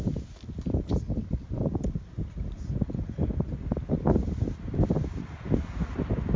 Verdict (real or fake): real